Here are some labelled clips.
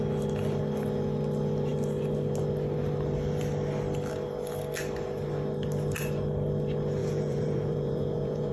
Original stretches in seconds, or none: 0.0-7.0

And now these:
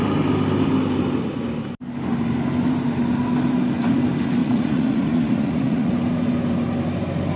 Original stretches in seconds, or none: 0.0-4.4; 5.9-7.4

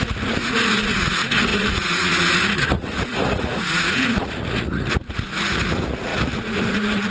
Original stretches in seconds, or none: none

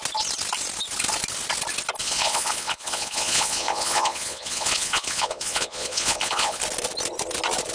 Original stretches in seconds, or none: 0.0-2.0; 6.6-7.7

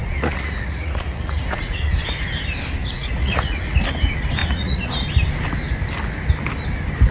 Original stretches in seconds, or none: 2.0-2.8; 3.8-4.4; 4.9-7.1

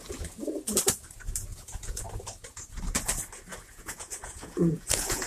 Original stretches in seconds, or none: 0.0-1.5; 2.0-3.5

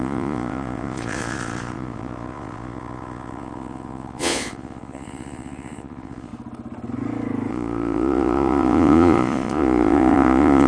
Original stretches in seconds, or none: 6.3-7.5